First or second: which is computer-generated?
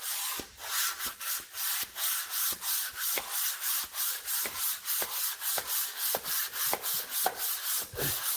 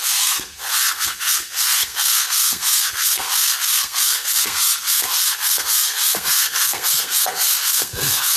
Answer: second